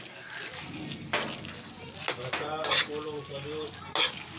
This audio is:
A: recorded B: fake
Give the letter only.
A